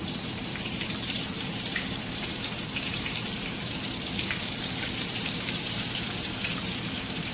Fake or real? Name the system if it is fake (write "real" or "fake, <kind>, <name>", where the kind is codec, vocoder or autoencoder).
fake, vocoder, BigVGAN v2